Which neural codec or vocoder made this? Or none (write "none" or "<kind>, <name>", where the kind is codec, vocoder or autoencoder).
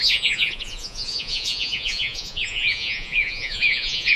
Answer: vocoder, Vocos